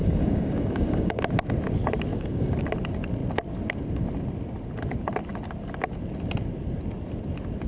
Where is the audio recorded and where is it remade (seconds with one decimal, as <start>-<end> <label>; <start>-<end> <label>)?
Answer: 0.0-1.2 remade; 1.2-2.1 recorded; 2.1-2.6 remade; 2.6-7.7 recorded